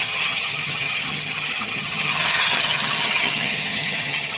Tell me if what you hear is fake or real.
fake